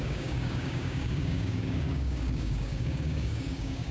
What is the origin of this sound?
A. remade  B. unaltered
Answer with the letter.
A